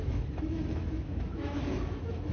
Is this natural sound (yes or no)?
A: no